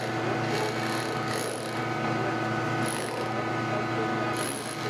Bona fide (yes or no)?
yes